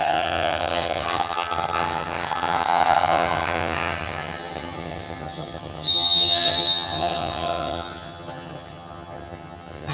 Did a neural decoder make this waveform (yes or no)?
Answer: yes